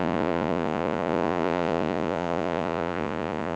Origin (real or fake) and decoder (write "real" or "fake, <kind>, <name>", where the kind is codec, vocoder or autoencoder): fake, vocoder, Vocos